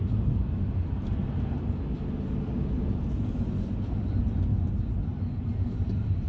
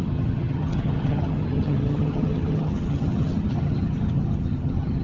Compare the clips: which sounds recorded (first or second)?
first